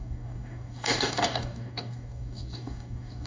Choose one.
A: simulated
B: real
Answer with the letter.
A